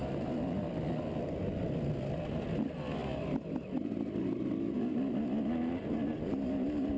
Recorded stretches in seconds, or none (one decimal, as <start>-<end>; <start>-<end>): 0.0-7.0

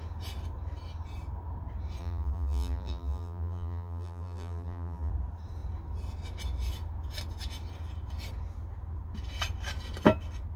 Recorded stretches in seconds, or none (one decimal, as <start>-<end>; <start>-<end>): 0.0-2.0; 5.1-10.6

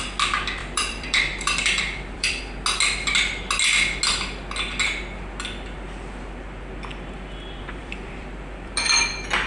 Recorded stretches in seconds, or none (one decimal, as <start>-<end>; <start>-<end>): 0.0-0.6; 2.4-7.8; 9.0-9.5

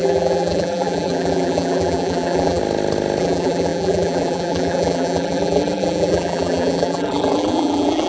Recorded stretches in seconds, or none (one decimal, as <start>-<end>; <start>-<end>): 2.6-3.2